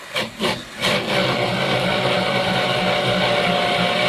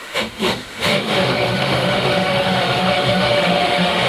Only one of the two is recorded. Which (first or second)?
first